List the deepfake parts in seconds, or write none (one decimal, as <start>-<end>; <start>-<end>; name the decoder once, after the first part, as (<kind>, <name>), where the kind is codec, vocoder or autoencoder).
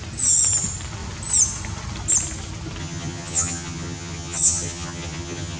2.8-5.6 (vocoder, HiFi-GAN)